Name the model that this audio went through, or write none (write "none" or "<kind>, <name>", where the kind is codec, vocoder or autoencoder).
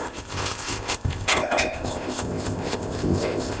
codec, ZipCodec